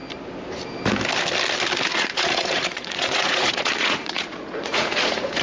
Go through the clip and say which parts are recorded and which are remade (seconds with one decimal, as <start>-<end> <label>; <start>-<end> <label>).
0.0-1.9 recorded; 1.9-5.4 remade